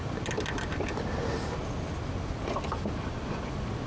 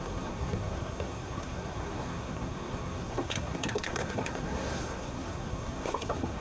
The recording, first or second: first